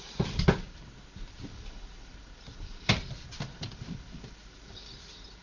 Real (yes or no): yes